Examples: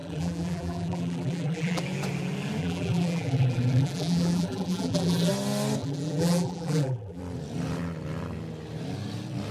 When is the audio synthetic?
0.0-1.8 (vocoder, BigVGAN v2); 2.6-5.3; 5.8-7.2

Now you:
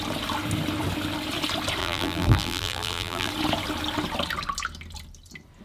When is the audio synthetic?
1.8-3.3 (vocoder, BigVGAN v2)